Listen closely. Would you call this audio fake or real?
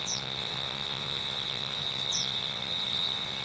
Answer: fake